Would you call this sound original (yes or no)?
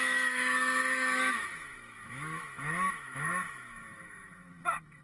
no